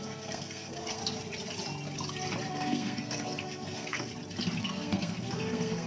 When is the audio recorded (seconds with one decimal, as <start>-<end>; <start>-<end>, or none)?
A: 1.0-2.5; 4.1-4.6